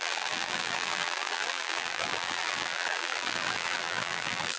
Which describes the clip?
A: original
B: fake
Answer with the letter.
B